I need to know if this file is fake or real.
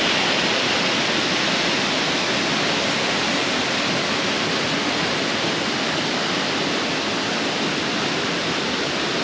real